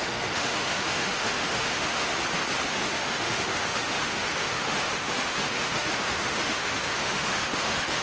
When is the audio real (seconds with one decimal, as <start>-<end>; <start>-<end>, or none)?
2.1-2.7